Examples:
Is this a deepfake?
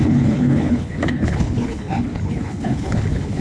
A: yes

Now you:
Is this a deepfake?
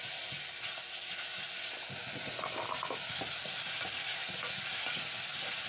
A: no